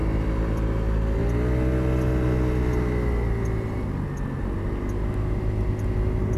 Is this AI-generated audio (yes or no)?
no